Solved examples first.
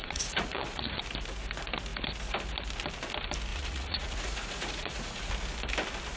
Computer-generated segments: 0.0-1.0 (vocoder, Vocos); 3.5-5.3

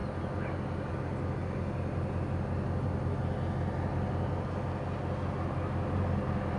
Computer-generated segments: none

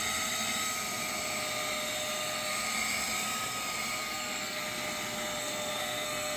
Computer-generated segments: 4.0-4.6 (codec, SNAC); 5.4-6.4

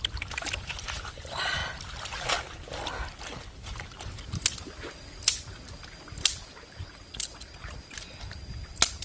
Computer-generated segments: none